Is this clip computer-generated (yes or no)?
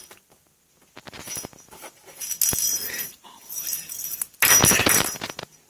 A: no